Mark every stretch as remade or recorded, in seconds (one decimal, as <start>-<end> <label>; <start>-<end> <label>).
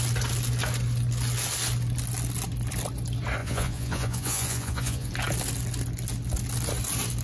0.0-3.4 recorded; 3.4-5.1 remade; 5.1-7.2 recorded